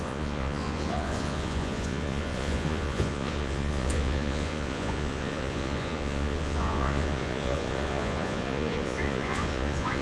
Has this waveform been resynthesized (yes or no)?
yes